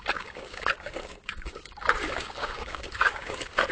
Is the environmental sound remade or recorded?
remade